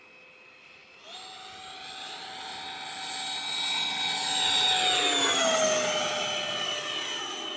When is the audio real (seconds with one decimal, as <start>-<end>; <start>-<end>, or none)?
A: 0.0-7.6